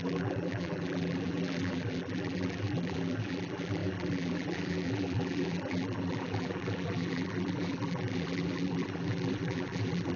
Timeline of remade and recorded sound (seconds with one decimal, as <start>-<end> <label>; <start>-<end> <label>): 0.0-10.2 remade